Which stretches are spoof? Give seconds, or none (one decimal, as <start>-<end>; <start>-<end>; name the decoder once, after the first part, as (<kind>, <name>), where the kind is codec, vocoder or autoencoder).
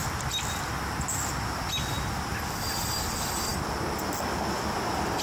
none